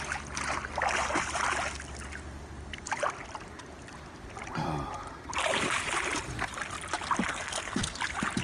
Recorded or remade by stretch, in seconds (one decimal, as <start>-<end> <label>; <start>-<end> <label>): 0.0-7.3 recorded; 7.3-8.0 remade; 8.0-8.4 recorded